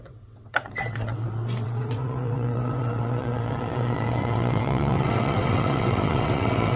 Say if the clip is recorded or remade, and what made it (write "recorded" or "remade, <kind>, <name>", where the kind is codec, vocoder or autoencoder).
remade, vocoder, WaveNeXt